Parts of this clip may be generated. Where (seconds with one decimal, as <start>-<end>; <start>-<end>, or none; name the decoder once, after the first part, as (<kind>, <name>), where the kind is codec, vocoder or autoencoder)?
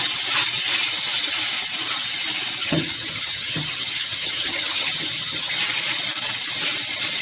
2.6-5.6 (vocoder, HiFi-GAN)